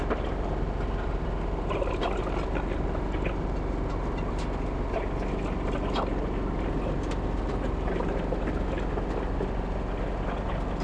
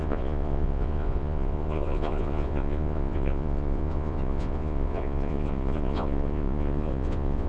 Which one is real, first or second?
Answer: first